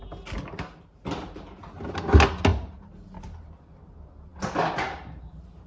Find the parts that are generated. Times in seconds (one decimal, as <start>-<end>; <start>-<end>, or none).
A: none